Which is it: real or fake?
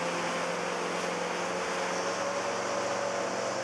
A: real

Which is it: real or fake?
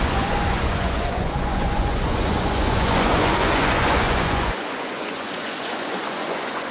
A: fake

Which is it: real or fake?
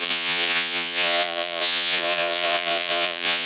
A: fake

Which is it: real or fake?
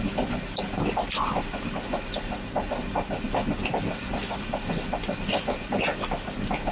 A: real